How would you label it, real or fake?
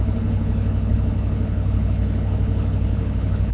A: fake